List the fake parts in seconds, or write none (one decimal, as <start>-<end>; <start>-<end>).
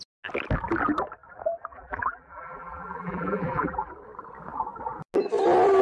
1.7-3.9